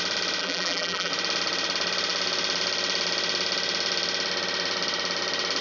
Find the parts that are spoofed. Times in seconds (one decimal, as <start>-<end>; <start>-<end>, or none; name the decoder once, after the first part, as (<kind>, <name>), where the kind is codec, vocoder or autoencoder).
0.4-1.1 (vocoder, BigVGAN v2)

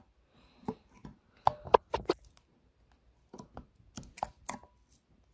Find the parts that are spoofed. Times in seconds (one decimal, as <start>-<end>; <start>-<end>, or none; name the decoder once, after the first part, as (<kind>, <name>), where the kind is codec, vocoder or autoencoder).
none

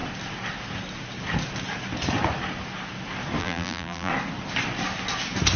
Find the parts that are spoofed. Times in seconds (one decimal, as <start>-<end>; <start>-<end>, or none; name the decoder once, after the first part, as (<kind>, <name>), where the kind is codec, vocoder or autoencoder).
3.4-4.1 (vocoder, BigVGAN v2)

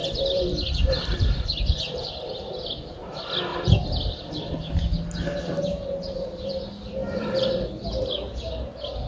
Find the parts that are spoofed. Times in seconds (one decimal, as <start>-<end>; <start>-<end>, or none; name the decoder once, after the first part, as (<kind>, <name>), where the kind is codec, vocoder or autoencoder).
0.0-2.5 (vocoder, BigVGAN v2); 3.5-4.3; 7.0-7.5